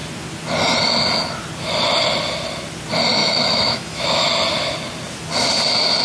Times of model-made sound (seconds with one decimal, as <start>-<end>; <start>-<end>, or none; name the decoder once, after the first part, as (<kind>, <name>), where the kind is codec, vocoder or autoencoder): 3.2-4.3 (autoencoder, DAC-VAE)